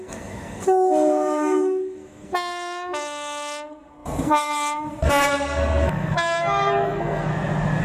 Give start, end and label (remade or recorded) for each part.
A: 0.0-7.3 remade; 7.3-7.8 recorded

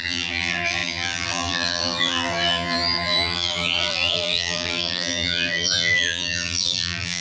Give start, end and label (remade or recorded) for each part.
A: 0.0-7.2 remade

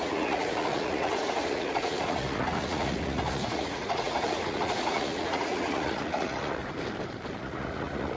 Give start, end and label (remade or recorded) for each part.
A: 0.0-6.6 remade; 6.6-7.4 recorded; 7.4-8.2 remade

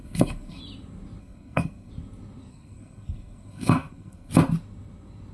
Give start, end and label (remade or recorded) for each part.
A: 0.0-0.6 remade; 0.6-1.2 recorded; 1.2-1.9 remade; 1.9-2.5 recorded; 2.5-4.3 remade; 4.3-5.3 recorded

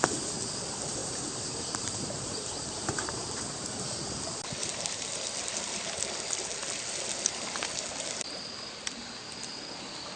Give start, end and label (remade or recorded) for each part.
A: 0.0-1.0 recorded; 1.0-3.4 remade; 3.4-4.6 recorded; 4.6-5.1 remade; 5.1-10.2 recorded

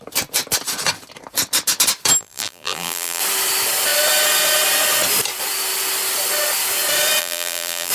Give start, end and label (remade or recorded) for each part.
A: 0.0-2.2 recorded; 2.2-3.2 remade; 3.2-7.2 recorded; 7.2-7.9 remade

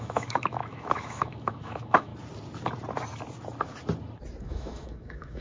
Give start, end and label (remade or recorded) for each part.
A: 0.0-2.1 remade; 2.1-4.4 recorded; 4.4-5.4 remade

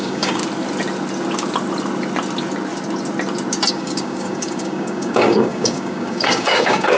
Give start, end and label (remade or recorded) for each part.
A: 0.0-0.4 remade; 0.4-3.7 recorded; 3.7-7.0 remade